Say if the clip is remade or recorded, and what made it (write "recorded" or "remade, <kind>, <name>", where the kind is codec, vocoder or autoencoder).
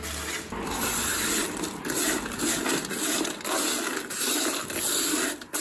recorded